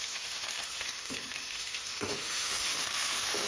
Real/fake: fake